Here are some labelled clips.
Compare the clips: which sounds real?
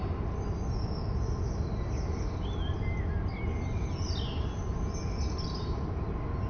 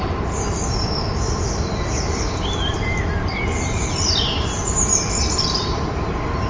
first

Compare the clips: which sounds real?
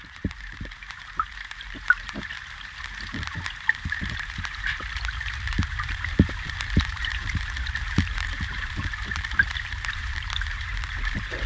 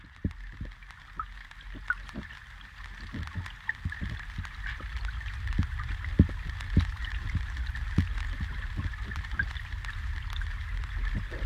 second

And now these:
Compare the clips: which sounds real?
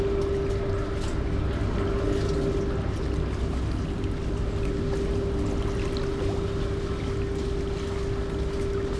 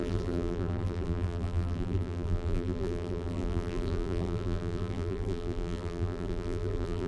first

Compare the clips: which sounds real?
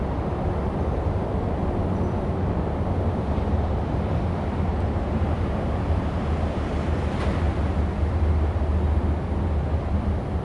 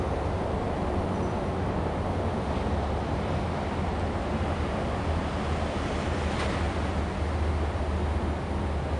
second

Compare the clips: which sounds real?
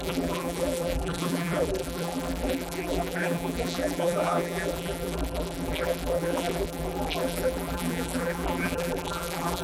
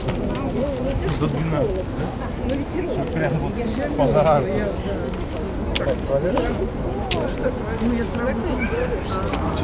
second